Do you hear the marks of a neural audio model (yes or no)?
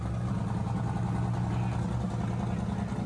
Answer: no